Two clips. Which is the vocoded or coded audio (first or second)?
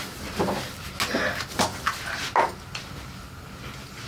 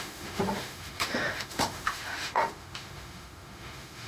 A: second